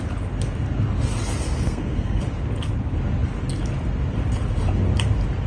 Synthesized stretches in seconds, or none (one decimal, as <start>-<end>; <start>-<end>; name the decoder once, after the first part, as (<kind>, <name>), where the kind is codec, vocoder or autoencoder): 1.4-2.2 (codec, SNAC)

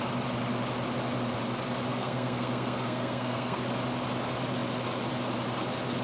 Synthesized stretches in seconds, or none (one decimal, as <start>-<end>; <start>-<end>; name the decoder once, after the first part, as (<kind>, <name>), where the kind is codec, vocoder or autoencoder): 1.9-3.6 (codec, SNAC)

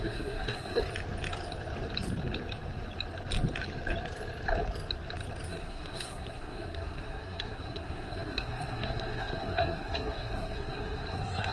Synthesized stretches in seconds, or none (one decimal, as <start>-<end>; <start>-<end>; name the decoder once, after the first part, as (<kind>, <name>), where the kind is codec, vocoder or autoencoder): 0.0-0.8 (codec, SNAC); 5.5-11.5

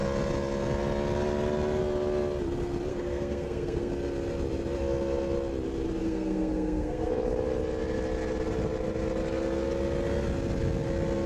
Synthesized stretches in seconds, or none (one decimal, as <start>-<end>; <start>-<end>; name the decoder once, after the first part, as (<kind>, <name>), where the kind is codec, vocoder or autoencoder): 2.9-3.9 (codec, SNAC); 6.0-7.1

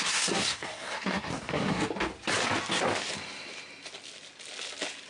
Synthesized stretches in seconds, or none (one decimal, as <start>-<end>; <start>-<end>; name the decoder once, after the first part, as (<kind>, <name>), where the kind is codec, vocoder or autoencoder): 0.0-1.8 (codec, SNAC)

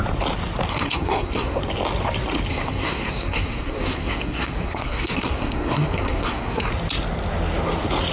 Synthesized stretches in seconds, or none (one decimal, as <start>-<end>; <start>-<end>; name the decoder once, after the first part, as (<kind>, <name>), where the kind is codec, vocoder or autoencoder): 0.7-1.6 (codec, SNAC); 2.5-6.7